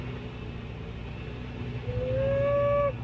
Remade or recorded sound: recorded